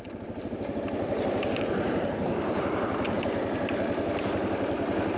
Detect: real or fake fake